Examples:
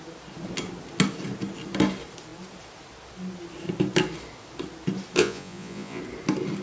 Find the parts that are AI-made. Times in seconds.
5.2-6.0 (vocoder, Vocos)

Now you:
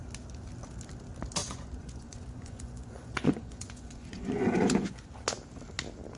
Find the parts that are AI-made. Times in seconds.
1.4-5.1 (vocoder, Vocos)

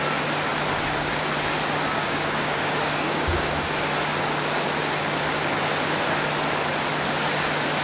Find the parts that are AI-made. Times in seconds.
2.0-3.5 (codec, DAC)